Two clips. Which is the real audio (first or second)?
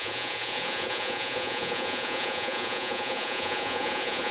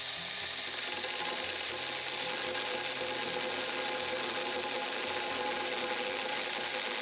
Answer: second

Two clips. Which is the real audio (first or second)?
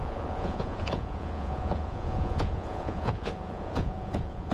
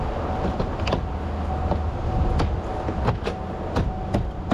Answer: second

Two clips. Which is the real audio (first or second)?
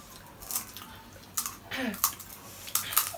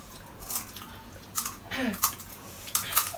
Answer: first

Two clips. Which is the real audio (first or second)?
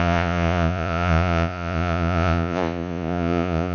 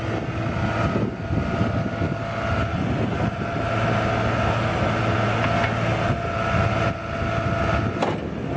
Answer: second